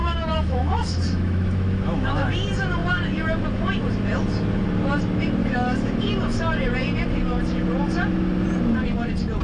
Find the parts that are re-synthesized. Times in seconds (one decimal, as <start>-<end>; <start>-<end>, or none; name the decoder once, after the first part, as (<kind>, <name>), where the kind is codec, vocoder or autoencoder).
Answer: 0.0-2.3 (autoencoder, DAC-VAE); 5.4-6.1